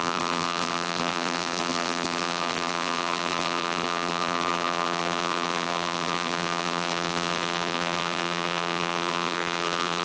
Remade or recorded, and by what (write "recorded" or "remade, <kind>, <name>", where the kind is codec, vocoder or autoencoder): remade, vocoder, BigVGAN v2